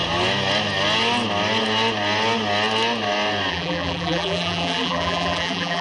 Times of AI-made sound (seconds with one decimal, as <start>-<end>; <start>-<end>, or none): 3.5-5.8